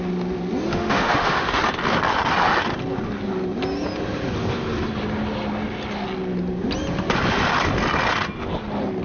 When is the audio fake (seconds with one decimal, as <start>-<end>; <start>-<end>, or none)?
0.7-1.6